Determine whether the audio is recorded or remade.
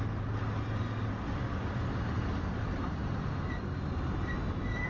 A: recorded